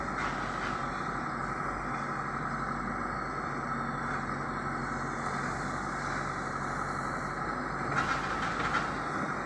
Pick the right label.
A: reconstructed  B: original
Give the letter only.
B